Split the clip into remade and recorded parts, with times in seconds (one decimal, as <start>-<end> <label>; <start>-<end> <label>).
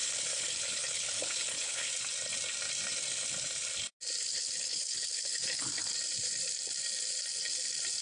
0.0-1.9 remade; 1.9-4.2 recorded; 4.2-5.9 remade; 5.9-8.0 recorded